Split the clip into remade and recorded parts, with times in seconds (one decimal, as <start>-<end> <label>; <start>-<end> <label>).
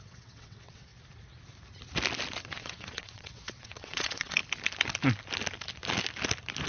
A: 0.0-0.9 remade; 0.9-2.4 recorded; 2.4-4.4 remade; 4.4-6.7 recorded